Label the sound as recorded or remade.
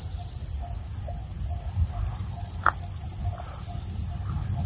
recorded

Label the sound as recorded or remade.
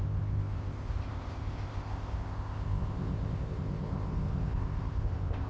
remade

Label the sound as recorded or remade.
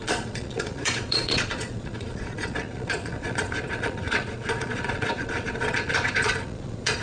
remade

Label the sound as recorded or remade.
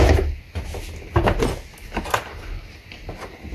recorded